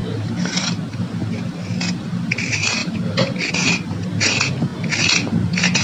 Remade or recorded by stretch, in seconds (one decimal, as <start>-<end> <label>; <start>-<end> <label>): 0.0-1.2 recorded; 1.2-2.3 remade; 2.3-2.8 recorded; 2.8-3.5 remade; 3.5-5.8 recorded